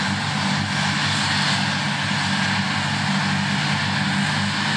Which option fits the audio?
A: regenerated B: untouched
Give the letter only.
B